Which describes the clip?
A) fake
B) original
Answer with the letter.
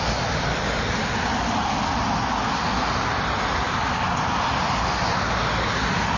B